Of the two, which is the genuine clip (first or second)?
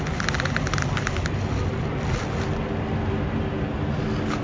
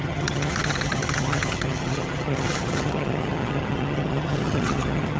first